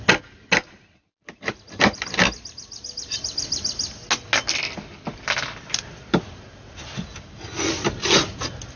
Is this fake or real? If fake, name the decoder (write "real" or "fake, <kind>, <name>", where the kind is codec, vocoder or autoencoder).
real